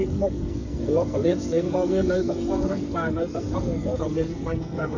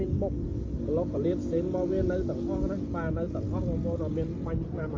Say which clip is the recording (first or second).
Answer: second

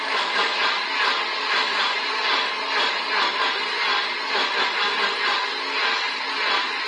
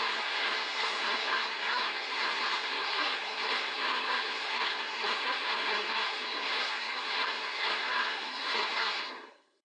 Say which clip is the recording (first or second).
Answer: first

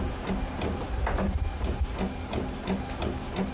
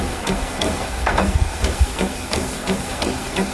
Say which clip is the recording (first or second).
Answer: first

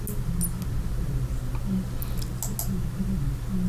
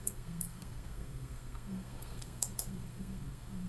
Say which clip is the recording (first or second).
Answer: first